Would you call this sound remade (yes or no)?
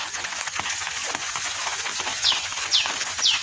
yes